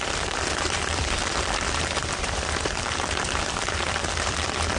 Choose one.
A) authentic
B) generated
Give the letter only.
B